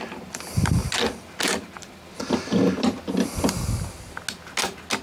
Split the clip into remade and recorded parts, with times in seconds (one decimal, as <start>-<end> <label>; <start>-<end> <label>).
0.0-5.0 recorded